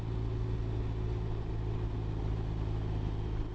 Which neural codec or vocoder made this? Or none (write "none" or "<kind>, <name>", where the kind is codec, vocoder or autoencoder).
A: none